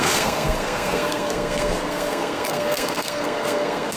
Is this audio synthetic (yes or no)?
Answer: yes